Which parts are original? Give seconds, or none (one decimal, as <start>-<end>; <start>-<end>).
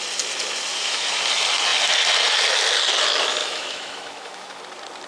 0.0-0.7; 1.2-3.4; 4.6-5.1